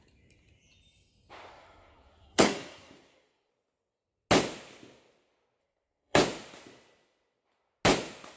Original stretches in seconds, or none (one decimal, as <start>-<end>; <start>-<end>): 0.0-1.5; 3.5-5.6; 6.2-8.4